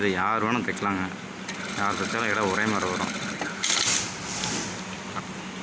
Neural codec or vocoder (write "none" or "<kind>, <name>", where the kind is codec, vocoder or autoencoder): none